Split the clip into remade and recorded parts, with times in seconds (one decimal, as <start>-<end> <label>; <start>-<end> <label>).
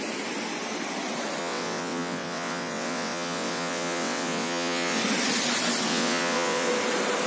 0.0-1.4 recorded; 1.4-5.0 remade; 5.0-5.9 recorded; 5.9-6.7 remade; 6.7-7.3 recorded